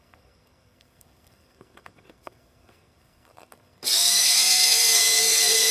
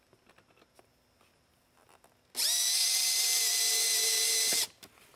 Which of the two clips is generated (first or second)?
first